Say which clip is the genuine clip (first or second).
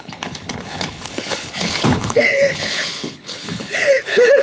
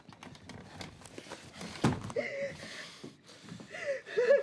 second